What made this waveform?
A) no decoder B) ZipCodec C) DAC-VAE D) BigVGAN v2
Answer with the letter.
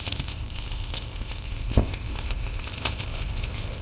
B